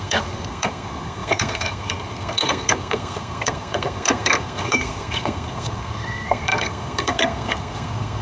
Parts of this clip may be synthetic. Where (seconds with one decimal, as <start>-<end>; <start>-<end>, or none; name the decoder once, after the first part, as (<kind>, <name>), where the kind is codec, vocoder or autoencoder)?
0.0-8.2 (codec, SNAC)